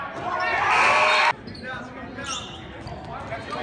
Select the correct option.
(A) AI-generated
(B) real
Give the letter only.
B